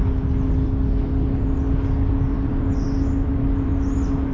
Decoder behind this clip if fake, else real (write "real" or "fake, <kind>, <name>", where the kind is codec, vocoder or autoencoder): real